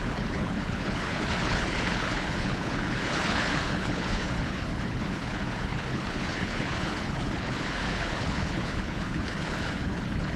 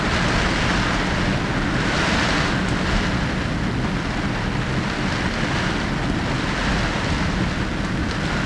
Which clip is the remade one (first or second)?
first